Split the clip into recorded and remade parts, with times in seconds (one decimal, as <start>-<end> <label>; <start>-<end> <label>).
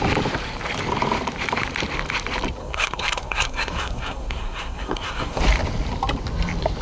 0.0-2.6 recorded; 2.6-5.4 remade; 5.4-6.8 recorded